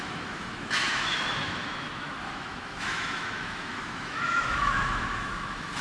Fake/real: fake